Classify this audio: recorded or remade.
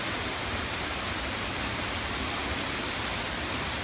recorded